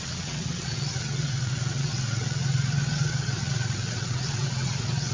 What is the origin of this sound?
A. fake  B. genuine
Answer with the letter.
A